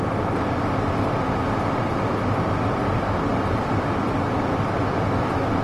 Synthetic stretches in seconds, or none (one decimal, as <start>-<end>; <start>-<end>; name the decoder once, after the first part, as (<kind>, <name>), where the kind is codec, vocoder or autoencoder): none